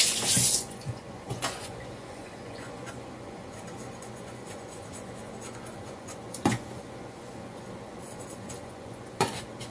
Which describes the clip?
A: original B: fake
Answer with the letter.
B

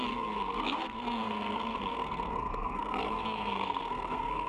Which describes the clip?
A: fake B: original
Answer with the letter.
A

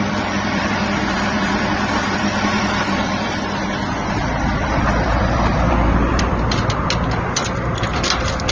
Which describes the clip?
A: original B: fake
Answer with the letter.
B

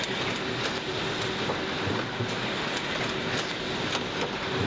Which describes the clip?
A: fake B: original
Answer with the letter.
B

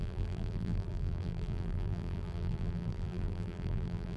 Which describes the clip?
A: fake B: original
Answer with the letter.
A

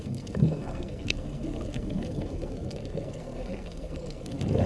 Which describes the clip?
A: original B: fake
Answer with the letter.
B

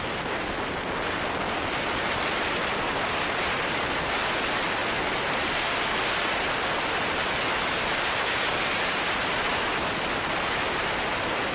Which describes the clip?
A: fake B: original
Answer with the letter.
B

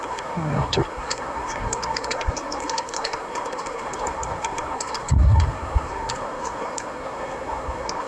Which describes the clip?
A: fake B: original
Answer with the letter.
A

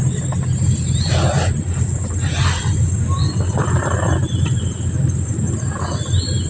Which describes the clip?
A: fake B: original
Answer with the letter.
B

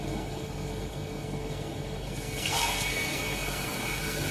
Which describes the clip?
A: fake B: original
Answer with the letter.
A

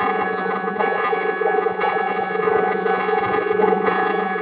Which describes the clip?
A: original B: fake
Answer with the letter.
B